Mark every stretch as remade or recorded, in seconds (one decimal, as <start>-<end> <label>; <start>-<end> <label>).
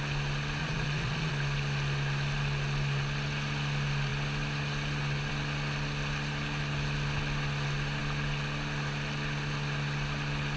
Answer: 0.0-0.6 recorded; 0.6-1.3 remade; 1.3-10.6 recorded